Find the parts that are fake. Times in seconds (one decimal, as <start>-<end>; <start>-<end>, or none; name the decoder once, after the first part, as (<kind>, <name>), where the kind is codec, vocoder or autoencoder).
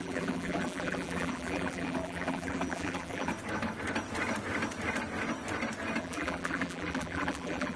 0.0-3.3 (vocoder, BigVGAN v2); 6.0-7.8